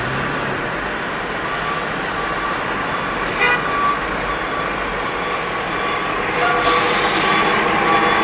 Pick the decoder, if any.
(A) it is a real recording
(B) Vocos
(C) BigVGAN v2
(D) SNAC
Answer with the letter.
A